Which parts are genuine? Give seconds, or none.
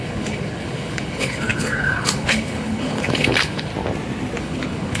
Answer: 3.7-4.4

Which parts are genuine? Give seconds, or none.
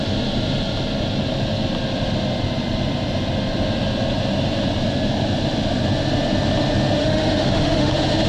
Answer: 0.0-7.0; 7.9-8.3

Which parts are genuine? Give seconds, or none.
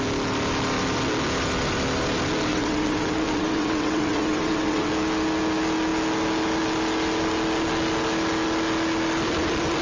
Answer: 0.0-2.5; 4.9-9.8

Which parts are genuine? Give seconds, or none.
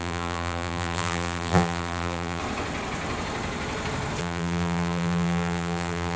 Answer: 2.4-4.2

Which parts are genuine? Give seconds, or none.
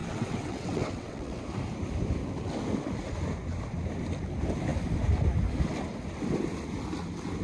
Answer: 1.4-7.4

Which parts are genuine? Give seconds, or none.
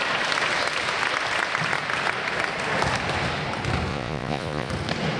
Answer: 0.0-3.9; 4.7-5.2